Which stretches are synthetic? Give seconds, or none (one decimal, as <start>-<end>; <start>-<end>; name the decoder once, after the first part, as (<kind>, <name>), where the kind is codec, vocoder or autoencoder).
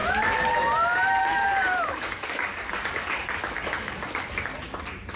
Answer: 1.2-4.3 (codec, DAC)